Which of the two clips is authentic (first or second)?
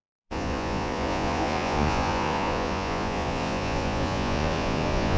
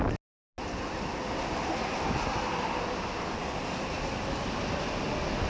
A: second